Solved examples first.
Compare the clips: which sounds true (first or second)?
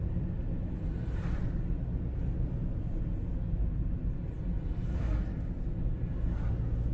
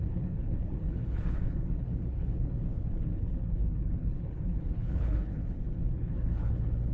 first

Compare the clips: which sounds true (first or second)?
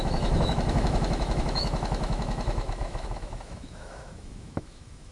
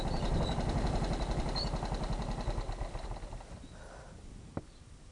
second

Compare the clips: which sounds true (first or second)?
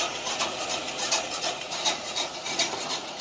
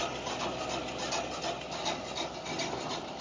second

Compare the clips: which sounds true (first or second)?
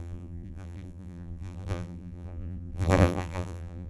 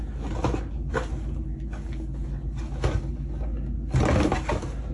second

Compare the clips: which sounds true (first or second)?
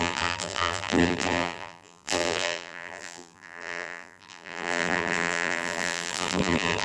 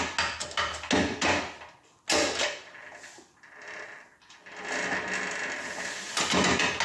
second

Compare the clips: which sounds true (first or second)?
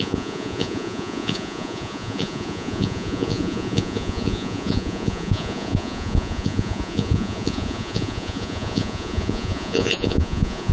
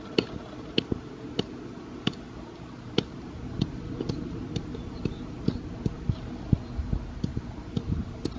second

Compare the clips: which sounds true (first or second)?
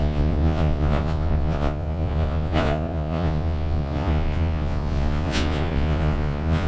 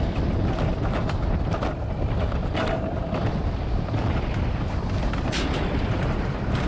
second